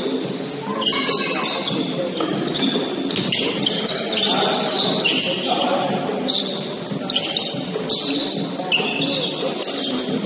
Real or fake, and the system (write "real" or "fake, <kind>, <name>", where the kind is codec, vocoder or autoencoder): real